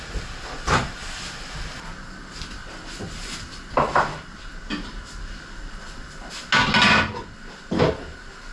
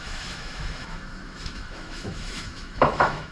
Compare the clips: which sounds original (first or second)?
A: first